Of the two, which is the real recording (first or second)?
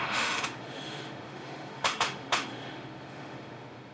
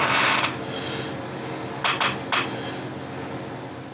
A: second